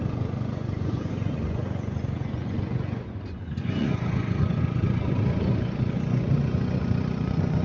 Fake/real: fake